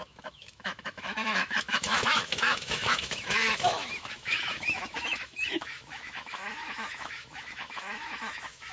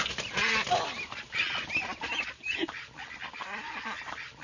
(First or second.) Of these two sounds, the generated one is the first